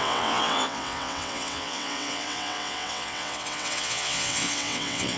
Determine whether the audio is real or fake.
fake